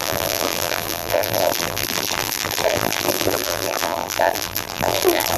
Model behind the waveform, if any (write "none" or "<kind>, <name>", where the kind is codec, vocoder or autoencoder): vocoder, BigVGAN v2